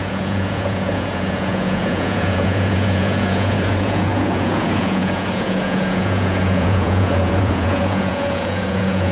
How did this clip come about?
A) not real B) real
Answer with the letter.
A